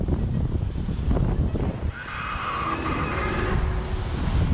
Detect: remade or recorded recorded